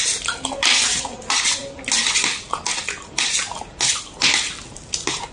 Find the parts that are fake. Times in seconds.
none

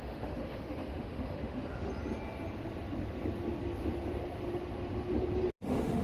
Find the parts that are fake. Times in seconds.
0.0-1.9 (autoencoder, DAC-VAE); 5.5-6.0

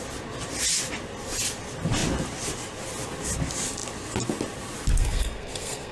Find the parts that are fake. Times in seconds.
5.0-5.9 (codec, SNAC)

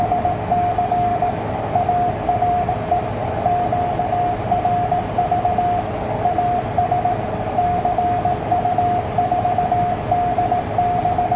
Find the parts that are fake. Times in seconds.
1.1-2.7 (vocoder, BigVGAN v2); 3.2-4.4

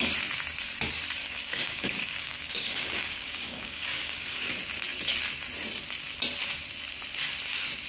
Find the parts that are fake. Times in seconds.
1.2-4.5 (codec, DAC)

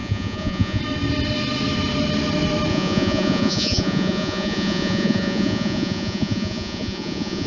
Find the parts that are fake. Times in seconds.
0.0-0.8 (vocoder, Vocos); 2.7-7.5

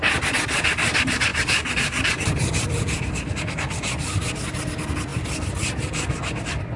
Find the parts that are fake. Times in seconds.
1.3-4.3 (vocoder, BigVGAN v2); 5.1-5.7

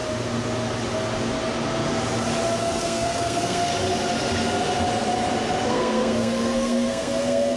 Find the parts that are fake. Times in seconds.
2.6-3.7 (codec, SNAC); 5.7-7.6